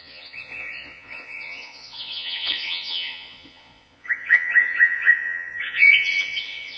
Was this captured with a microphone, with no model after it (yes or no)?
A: no